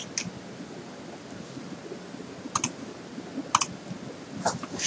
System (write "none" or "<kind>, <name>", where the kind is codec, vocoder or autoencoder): none